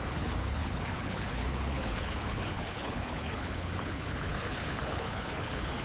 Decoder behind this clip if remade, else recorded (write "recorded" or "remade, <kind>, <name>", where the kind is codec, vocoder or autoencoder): remade, codec, HILCodec